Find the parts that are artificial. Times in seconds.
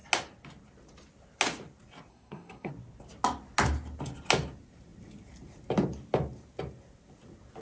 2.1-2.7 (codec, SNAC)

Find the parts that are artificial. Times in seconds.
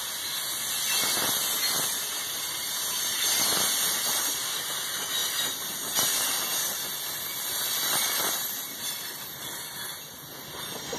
5.2-7.6 (vocoder, BigVGAN v2)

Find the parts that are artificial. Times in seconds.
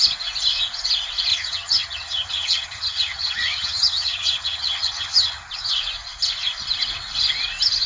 1.3-5.5 (vocoder, HiFi-GAN)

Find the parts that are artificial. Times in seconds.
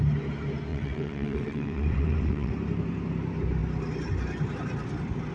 0.7-2.5 (vocoder, WaveNeXt)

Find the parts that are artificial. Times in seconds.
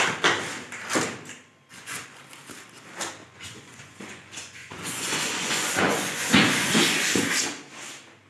1.7-2.2 (vocoder, Vocos); 3.2-7.2